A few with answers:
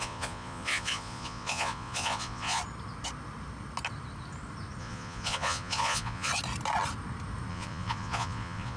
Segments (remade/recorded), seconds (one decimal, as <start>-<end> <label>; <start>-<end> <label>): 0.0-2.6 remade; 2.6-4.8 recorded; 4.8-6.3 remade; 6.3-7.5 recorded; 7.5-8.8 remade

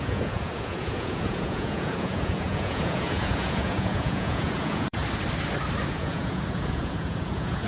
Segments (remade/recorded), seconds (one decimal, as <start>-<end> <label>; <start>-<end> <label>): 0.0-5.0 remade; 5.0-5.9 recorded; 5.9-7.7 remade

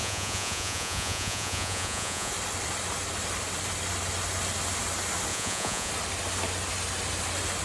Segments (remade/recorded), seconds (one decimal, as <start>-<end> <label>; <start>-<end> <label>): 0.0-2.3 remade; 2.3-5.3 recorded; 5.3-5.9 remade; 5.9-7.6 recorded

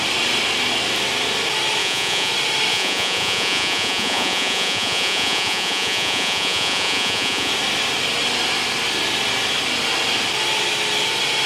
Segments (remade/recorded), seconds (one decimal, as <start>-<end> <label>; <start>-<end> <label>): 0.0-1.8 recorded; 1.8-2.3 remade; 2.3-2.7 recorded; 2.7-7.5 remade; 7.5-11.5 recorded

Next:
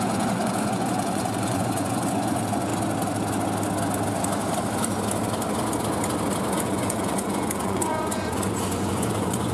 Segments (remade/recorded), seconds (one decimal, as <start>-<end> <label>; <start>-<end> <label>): 0.0-2.7 remade; 2.7-6.5 recorded; 6.5-9.5 remade

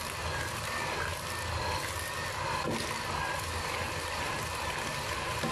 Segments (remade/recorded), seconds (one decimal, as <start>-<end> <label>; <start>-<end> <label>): 0.0-5.5 recorded

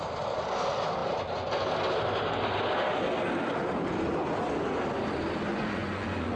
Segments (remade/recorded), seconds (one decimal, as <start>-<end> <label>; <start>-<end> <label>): 0.0-5.5 recorded; 5.5-6.4 remade